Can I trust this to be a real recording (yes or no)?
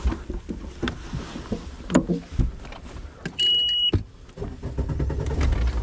yes